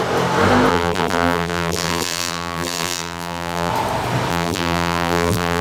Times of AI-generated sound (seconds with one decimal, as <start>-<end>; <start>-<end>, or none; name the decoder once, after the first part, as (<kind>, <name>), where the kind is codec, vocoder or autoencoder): 0.7-3.7 (vocoder, BigVGAN v2); 4.3-5.6